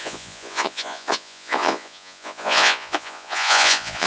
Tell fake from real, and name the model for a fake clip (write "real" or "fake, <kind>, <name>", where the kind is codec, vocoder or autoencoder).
fake, vocoder, Vocos